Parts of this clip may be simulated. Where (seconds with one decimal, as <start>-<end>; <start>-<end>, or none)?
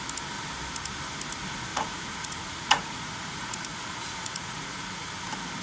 1.7-5.1